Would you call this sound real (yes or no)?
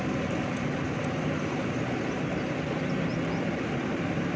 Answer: yes